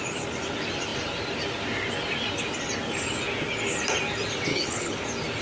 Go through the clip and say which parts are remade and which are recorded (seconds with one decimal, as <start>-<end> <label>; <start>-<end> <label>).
0.0-4.5 recorded; 4.5-5.0 remade; 5.0-5.4 recorded

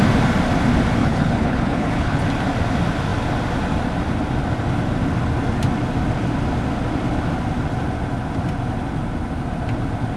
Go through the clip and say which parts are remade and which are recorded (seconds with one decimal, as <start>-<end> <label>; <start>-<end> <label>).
0.0-1.0 recorded; 1.0-2.2 remade; 2.2-10.2 recorded